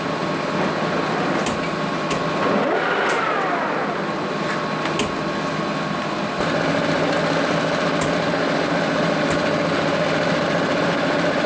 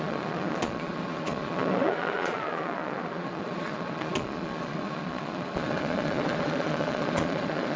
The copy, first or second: second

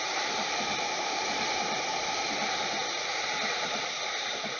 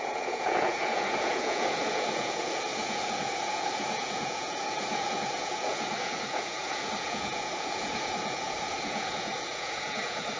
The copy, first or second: second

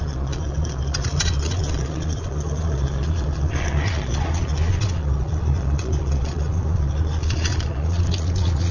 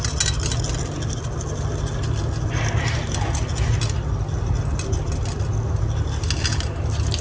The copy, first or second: first